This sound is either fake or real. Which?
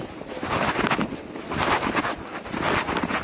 real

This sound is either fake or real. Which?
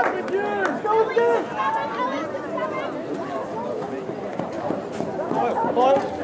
real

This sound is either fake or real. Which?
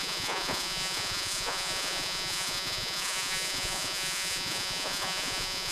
fake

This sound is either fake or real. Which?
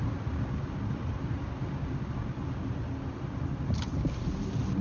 real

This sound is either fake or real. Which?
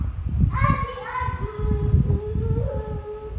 real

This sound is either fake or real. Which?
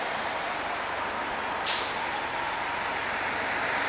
real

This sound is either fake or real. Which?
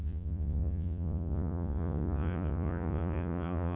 fake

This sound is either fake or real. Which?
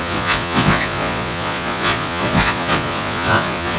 fake